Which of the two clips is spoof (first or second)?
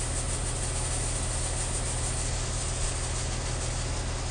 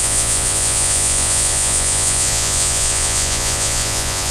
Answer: second